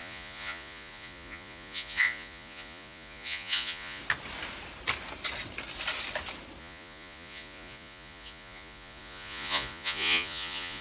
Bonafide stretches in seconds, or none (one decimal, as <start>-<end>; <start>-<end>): 4.0-6.6